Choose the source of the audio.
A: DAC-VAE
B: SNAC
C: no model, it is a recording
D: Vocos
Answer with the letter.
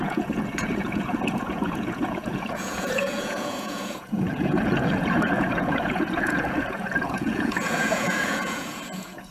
D